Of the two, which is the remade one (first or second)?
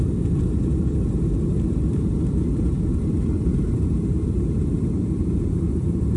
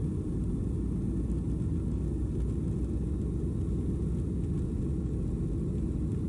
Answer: first